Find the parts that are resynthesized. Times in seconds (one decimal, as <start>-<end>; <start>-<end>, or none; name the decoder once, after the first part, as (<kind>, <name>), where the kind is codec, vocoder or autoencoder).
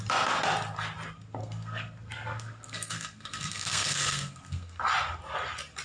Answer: 1.4-4.8 (codec, SNAC)